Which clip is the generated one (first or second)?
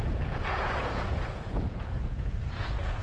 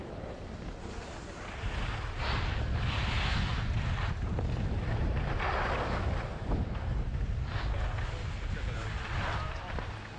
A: first